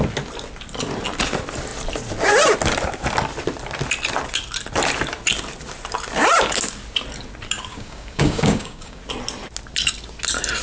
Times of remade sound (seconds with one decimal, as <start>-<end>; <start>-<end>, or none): 7.7-9.0